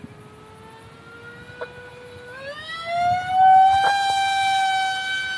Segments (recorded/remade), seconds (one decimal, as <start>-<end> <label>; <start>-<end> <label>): 0.0-5.4 recorded